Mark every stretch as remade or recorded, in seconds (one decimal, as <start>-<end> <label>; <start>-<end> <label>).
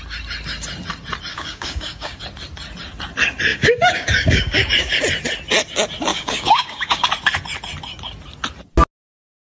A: 0.0-1.3 recorded; 1.3-2.2 remade; 2.2-3.5 recorded; 3.5-5.0 remade; 5.0-6.1 recorded; 6.1-7.1 remade; 7.1-9.5 recorded